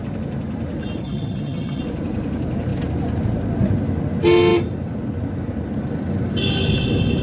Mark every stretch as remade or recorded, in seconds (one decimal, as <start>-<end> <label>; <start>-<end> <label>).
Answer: 0.0-1.0 recorded; 1.0-1.8 remade; 1.8-7.2 recorded